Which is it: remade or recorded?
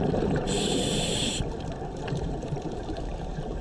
remade